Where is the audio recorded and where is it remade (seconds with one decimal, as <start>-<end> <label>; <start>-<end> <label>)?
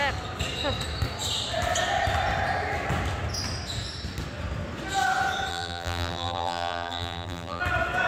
0.0-5.5 recorded; 5.5-7.6 remade; 7.6-8.1 recorded